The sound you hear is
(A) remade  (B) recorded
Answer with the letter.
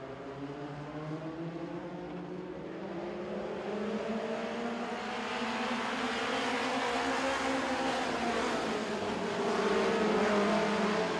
B